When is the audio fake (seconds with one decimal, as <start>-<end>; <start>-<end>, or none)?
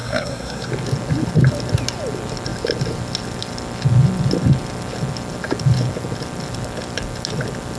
0.0-0.7